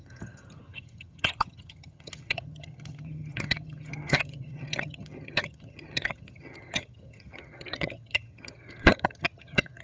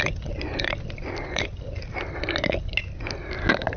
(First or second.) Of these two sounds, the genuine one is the second